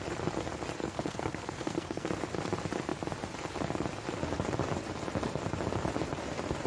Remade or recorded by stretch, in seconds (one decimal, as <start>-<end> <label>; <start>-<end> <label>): 0.0-0.8 recorded; 0.8-2.1 remade; 2.1-6.7 recorded